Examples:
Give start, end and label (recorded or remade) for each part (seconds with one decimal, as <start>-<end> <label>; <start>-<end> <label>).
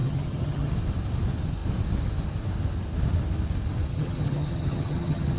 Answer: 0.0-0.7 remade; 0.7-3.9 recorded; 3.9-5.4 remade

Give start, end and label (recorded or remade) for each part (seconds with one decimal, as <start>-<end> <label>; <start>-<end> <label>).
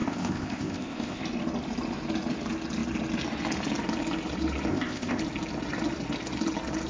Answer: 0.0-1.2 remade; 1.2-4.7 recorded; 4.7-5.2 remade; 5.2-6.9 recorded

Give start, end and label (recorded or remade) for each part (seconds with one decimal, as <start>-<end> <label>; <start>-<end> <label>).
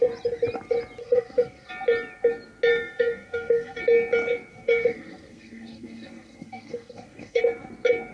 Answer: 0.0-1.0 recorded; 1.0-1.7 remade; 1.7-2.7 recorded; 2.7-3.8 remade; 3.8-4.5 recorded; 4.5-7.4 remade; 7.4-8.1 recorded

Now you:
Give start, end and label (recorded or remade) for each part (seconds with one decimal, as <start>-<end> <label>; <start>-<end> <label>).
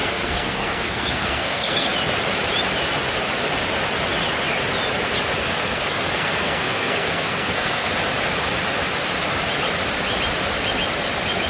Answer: 0.0-1.9 remade; 1.9-5.4 recorded; 5.4-7.9 remade; 7.9-11.5 recorded